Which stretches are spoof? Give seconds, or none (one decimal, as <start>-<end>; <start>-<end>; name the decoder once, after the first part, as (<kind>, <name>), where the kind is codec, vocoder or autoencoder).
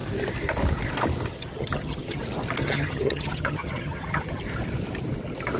1.3-2.2 (vocoder, HiFi-GAN); 2.6-4.4